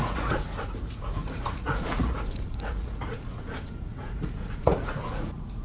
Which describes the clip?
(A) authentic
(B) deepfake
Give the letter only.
B